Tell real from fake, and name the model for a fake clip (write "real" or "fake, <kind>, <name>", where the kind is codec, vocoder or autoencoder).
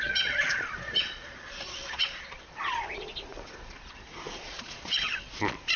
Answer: fake, vocoder, Vocos